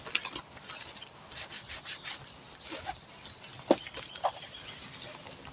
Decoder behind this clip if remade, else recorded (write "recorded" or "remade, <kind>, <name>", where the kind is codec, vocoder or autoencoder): recorded